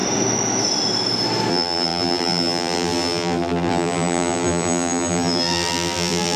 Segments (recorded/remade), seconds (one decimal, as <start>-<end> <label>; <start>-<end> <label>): 0.0-1.5 recorded; 1.5-6.4 remade